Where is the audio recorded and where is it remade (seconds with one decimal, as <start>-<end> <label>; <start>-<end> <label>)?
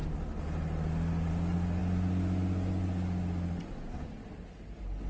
0.0-5.1 recorded